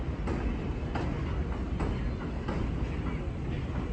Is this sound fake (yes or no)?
no